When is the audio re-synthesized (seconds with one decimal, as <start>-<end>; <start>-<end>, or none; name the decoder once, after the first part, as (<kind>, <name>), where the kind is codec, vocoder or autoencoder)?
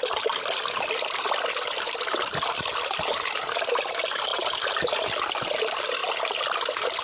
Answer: none